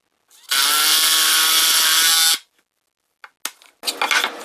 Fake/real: real